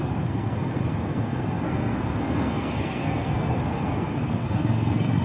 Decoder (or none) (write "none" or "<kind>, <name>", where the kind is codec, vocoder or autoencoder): codec, SNAC